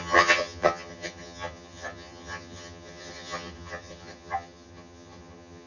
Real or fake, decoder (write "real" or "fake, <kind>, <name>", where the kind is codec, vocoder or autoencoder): fake, vocoder, HiFi-GAN